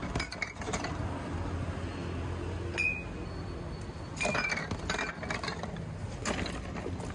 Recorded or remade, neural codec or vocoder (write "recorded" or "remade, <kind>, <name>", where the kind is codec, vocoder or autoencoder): recorded